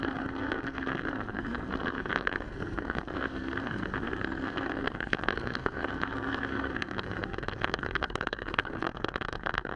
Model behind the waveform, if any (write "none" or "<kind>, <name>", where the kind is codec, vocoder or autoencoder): codec, SNAC